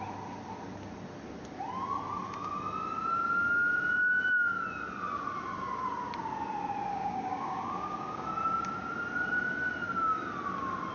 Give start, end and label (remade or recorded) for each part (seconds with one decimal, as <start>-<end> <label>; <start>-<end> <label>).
0.0-6.9 recorded; 6.9-8.3 remade; 8.3-10.9 recorded